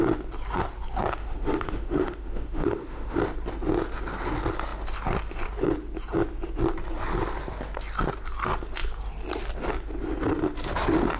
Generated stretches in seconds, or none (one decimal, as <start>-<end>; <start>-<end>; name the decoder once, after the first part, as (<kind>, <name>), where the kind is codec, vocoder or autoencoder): 1.2-3.2 (autoencoder, DAC-VAE)